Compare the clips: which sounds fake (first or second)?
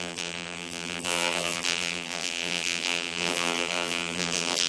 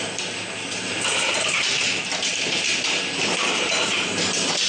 first